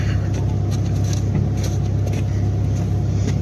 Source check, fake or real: real